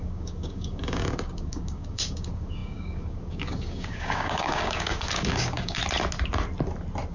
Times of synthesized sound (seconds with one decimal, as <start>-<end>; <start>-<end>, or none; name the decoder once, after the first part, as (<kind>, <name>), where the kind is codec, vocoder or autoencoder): 0.0-5.8 (codec, DAC)